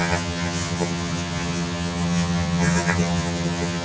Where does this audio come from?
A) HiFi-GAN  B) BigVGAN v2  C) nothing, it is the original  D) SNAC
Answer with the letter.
A